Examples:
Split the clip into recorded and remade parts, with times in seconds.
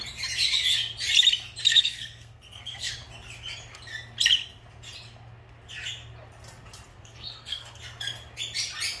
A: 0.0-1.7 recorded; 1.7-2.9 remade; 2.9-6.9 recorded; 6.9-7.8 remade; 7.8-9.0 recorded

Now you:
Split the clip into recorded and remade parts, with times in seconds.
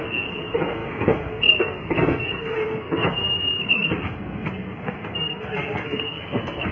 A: 0.0-6.7 remade